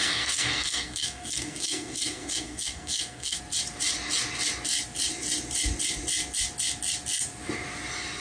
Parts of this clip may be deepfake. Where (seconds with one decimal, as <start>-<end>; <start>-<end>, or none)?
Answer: 0.0-3.4